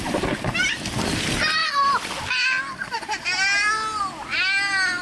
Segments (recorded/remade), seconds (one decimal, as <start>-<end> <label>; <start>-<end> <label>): 0.0-5.0 recorded